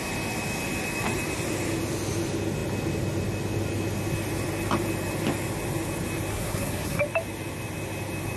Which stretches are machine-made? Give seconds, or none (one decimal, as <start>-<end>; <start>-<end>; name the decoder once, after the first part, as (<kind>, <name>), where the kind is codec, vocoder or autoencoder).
6.3-7.0 (codec, SNAC)